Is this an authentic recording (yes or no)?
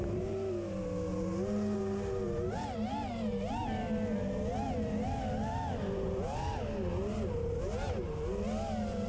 yes